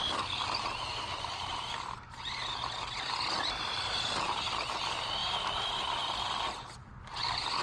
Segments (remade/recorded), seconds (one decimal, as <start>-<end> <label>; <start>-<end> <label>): 0.0-7.6 recorded